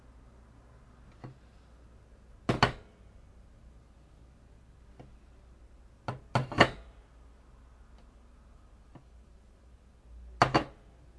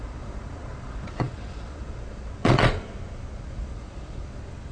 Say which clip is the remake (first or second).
second